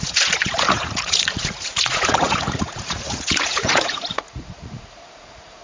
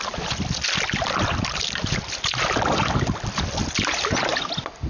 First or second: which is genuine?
second